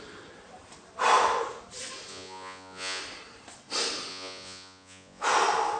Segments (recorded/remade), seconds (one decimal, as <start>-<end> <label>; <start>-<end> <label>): 0.0-2.1 recorded; 2.1-3.0 remade; 3.0-4.1 recorded; 4.1-5.2 remade; 5.2-5.8 recorded